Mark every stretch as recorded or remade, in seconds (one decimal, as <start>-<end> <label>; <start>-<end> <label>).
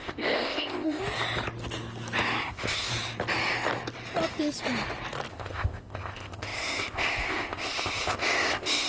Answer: 0.0-1.0 remade; 1.0-2.4 recorded; 2.4-2.9 remade; 2.9-5.3 recorded; 5.3-8.9 remade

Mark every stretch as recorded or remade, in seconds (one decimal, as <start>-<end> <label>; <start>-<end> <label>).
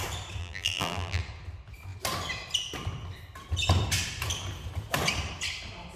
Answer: 0.0-0.4 recorded; 0.4-1.2 remade; 1.2-6.0 recorded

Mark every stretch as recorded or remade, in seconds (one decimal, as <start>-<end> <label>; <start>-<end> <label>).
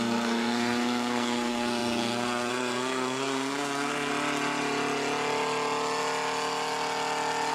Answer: 0.0-4.1 remade; 4.1-7.5 recorded